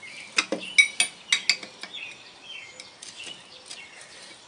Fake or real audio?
real